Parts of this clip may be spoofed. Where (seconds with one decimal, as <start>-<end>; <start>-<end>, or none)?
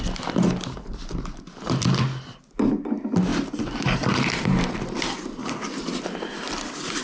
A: 3.3-4.7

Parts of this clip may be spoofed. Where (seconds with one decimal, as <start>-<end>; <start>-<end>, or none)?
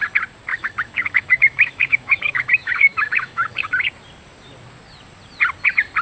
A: 0.5-3.9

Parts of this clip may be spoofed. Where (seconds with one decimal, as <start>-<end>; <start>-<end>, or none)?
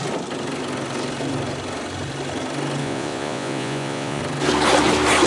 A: 2.8-4.2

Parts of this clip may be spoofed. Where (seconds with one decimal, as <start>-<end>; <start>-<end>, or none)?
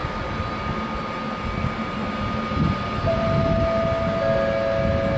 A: none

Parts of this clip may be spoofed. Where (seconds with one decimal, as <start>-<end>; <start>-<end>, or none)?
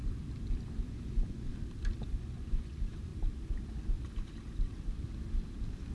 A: 0.8-1.5; 2.1-3.1